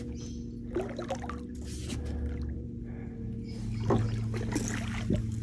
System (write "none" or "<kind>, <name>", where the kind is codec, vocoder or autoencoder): none